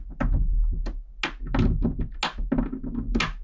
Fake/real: real